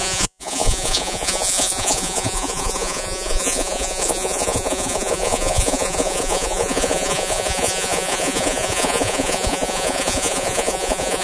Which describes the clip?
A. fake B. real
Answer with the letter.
A